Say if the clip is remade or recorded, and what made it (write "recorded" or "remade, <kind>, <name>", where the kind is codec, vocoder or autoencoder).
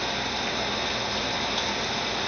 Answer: recorded